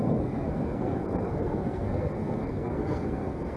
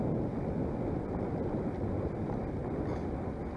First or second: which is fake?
first